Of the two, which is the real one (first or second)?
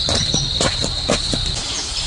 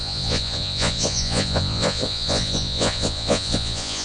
first